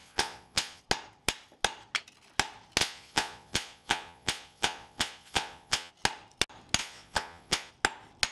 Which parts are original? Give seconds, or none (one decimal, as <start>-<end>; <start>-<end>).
0.8-2.8; 5.9-6.8; 7.7-8.3